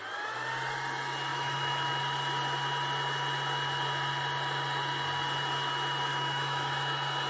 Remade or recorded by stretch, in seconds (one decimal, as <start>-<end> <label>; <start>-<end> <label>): 0.0-1.3 recorded; 1.3-2.0 remade; 2.0-6.1 recorded; 6.1-6.7 remade; 6.7-7.3 recorded